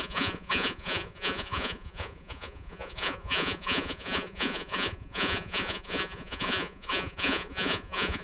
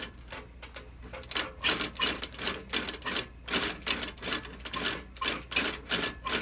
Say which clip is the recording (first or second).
second